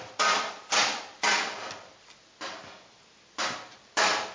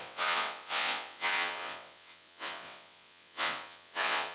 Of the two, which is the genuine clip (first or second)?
first